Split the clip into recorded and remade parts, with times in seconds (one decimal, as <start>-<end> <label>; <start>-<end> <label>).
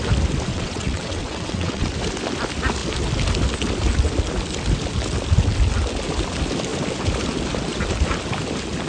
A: 0.0-0.5 recorded; 0.5-1.9 remade; 1.9-8.9 recorded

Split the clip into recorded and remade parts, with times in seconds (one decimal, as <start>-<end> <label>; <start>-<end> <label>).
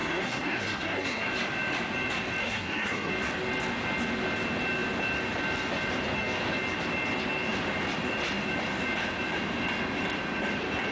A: 0.0-1.3 remade; 1.3-2.4 recorded; 2.4-3.1 remade; 3.1-10.9 recorded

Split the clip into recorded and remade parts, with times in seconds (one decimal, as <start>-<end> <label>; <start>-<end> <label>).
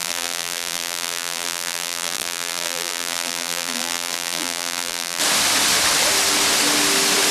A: 0.0-5.2 remade; 5.2-7.3 recorded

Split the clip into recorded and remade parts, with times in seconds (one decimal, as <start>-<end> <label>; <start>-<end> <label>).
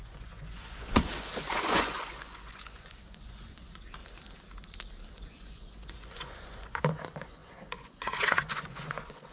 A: 0.0-4.0 remade; 4.0-5.1 recorded; 5.1-9.3 remade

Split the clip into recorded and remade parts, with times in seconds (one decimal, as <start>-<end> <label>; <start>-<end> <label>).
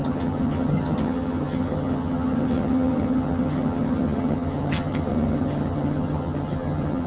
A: 0.0-7.1 remade